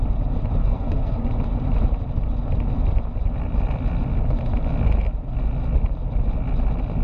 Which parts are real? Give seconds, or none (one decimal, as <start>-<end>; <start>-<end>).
0.0-0.6; 1.3-7.0